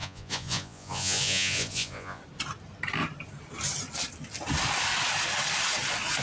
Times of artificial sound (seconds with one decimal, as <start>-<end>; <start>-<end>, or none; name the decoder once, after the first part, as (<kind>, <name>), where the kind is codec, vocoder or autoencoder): 0.0-2.2 (vocoder, Vocos)